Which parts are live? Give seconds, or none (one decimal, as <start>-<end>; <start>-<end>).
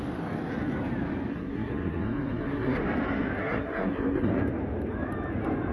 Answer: 0.0-1.3; 2.8-3.4; 4.3-5.7